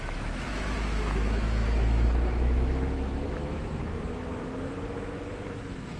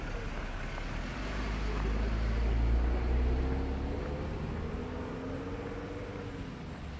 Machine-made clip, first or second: first